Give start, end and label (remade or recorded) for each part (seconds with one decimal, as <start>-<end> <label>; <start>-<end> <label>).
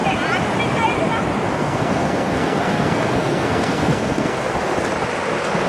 0.0-1.5 recorded; 1.5-4.6 remade; 4.6-5.7 recorded